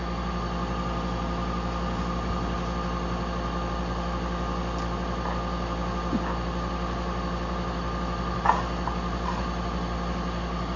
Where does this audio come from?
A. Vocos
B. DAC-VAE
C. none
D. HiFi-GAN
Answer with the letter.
C